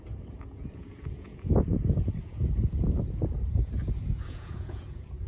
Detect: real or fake fake